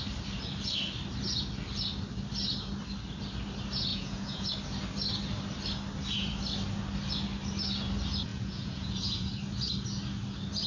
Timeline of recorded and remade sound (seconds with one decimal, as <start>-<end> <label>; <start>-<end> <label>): 0.0-3.9 recorded; 3.9-4.5 remade; 4.5-8.3 recorded; 8.3-9.3 remade; 9.3-10.7 recorded